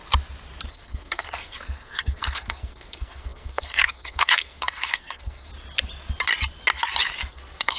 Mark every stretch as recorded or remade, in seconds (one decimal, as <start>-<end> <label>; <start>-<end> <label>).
0.0-0.7 recorded; 0.7-5.5 remade; 5.5-7.3 recorded; 7.3-7.8 remade